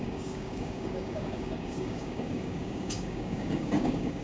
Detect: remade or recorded remade